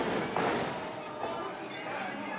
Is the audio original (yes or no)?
yes